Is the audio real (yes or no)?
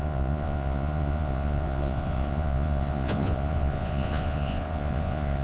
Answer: no